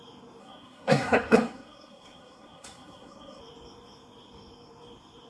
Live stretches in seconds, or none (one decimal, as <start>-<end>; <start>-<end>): 0.0-0.4; 3.4-5.3